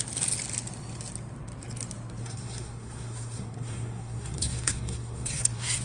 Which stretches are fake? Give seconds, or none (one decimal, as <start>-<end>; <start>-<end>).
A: 2.2-5.8